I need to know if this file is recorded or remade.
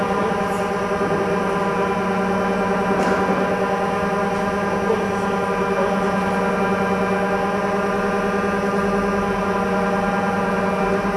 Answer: recorded